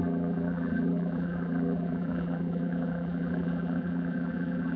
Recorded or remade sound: remade